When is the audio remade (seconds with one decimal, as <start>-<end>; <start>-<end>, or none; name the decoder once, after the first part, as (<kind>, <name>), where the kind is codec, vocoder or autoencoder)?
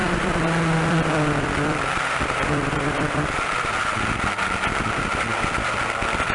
0.0-3.8 (vocoder, BigVGAN v2)